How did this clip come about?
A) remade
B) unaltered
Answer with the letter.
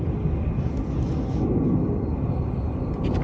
B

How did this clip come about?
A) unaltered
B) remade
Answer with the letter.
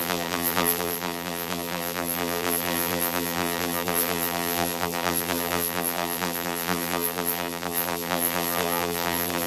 B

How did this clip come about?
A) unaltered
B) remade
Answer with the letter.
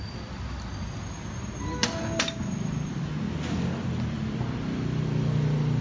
A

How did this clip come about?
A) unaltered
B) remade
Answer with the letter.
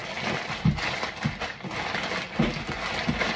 A